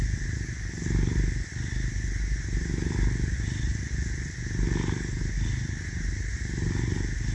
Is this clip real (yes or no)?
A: yes